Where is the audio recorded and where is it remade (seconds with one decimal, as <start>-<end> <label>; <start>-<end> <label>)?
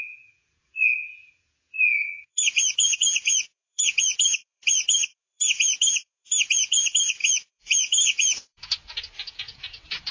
0.0-10.1 remade